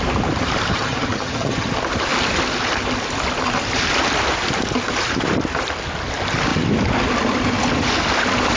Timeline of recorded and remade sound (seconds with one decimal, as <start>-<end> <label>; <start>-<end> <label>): 0.0-0.7 recorded; 0.7-1.7 remade; 1.7-8.6 recorded